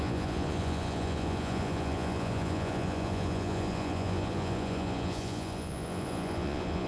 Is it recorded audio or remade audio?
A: remade